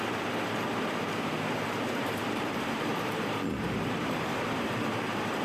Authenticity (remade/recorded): remade